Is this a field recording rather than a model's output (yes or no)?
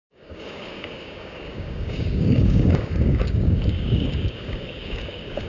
no